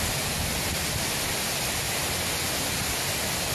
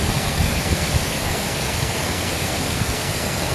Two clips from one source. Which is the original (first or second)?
first